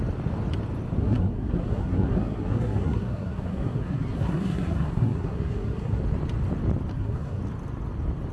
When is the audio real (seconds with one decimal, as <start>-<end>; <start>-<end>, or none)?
0.0-1.0; 6.0-6.9; 7.4-8.3